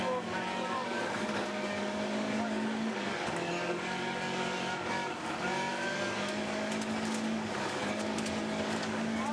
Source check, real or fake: fake